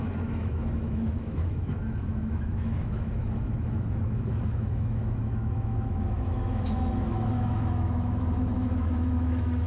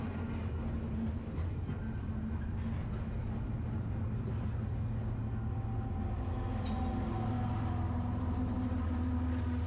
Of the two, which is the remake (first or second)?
first